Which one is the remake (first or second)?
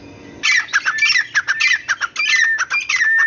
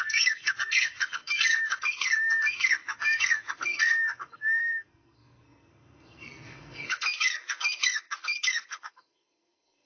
second